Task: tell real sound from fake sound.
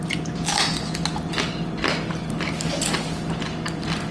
real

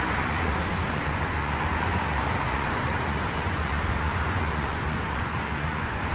fake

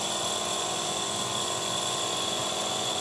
fake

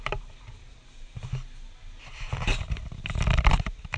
real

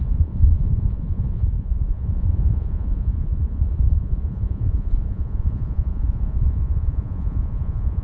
fake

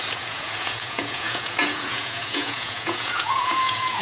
fake